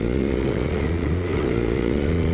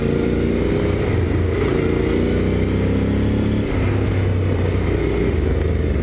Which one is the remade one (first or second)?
first